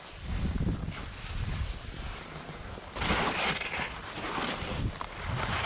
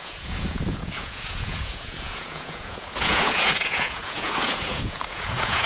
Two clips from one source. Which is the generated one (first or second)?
second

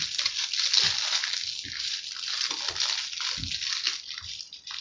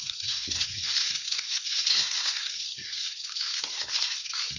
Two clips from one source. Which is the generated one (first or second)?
second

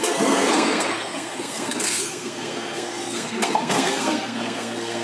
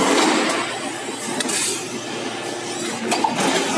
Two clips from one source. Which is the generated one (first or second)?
first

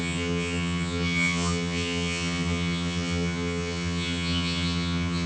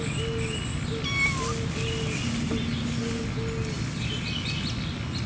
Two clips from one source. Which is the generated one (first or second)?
first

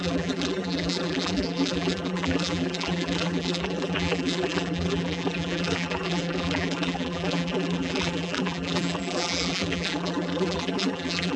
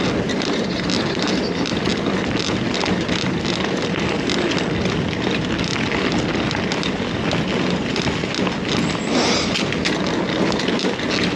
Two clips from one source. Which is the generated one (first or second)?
first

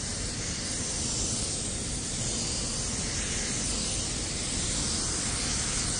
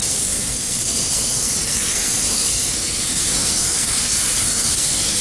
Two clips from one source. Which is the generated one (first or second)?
second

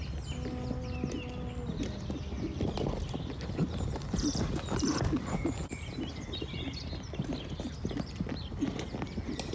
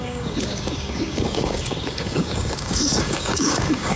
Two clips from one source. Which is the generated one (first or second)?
second